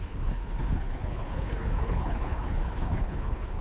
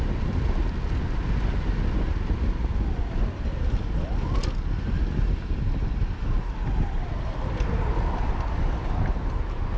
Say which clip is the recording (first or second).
second